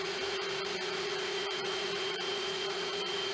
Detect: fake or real fake